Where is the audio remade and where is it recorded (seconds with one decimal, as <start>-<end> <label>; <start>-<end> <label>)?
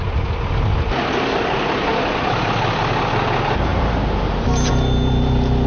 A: 0.0-5.7 recorded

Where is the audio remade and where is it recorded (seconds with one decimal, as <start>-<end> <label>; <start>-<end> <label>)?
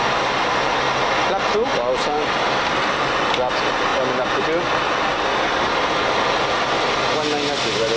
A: 0.0-8.0 recorded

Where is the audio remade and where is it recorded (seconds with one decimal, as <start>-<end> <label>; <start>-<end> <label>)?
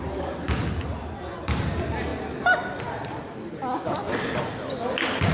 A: 0.0-5.3 recorded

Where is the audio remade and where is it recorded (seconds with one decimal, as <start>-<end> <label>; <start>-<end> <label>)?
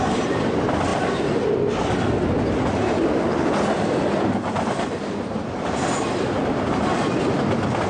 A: 0.0-7.9 recorded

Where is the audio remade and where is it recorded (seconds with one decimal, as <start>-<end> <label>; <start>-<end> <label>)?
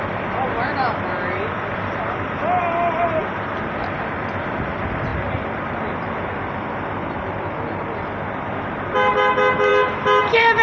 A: 0.0-10.6 recorded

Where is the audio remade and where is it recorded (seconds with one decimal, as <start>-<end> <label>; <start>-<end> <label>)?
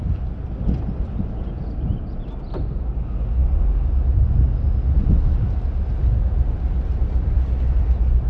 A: 0.0-8.3 recorded